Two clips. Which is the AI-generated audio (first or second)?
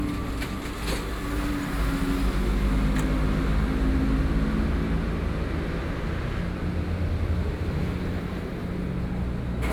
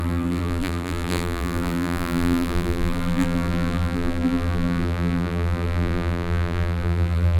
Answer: second